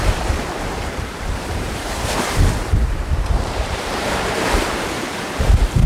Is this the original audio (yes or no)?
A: no